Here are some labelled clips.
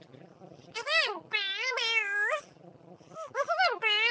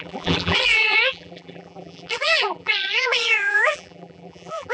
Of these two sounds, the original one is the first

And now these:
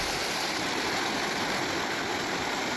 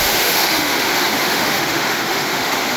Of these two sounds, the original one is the first